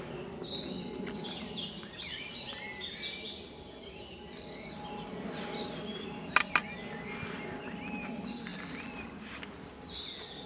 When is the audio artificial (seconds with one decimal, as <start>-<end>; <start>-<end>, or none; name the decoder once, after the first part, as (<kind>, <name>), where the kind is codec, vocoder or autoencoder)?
none